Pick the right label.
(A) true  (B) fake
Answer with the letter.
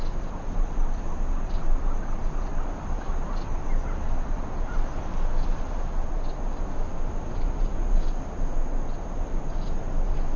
A